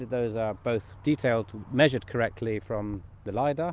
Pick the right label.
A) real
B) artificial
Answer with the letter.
A